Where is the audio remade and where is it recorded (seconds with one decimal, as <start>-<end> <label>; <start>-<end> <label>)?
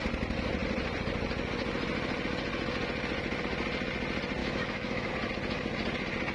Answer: 0.0-4.4 recorded; 4.4-5.1 remade; 5.1-6.3 recorded